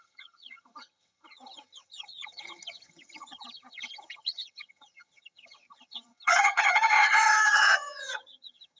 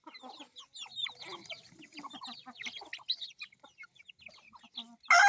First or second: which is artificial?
first